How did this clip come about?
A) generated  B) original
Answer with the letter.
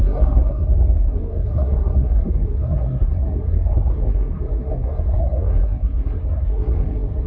A